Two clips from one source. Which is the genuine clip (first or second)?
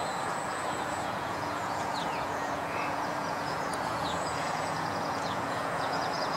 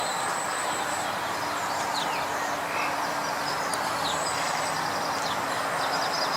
second